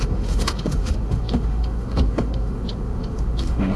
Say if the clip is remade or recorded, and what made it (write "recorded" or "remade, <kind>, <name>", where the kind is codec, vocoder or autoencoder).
remade, autoencoder, DAC-VAE